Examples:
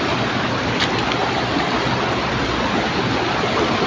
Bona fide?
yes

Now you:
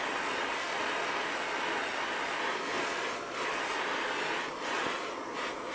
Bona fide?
yes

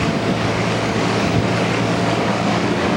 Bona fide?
no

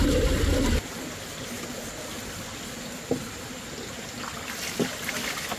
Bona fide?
yes